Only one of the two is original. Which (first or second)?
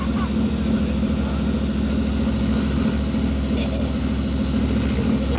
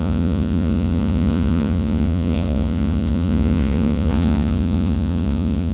first